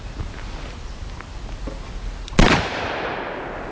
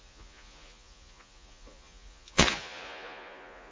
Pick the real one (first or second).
first